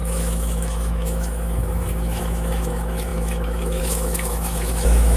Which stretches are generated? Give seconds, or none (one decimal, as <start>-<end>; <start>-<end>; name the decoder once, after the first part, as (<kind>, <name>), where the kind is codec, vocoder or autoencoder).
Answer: 0.0-5.2 (autoencoder, DAC-VAE)